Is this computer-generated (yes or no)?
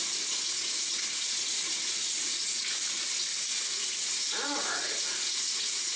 yes